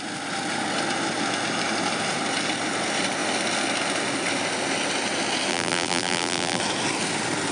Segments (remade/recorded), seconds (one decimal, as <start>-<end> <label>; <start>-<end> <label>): 0.0-5.5 recorded; 5.5-6.6 remade; 6.6-7.5 recorded